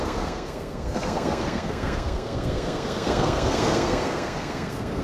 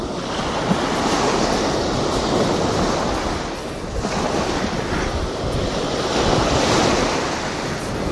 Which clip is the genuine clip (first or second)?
second